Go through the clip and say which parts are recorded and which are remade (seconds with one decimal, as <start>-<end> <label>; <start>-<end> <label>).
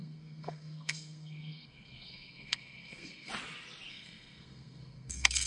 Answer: 0.0-3.3 remade; 3.3-3.9 recorded; 3.9-5.5 remade